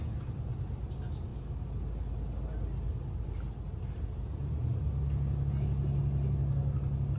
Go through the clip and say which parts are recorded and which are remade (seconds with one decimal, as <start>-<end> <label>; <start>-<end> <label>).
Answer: 0.0-7.2 recorded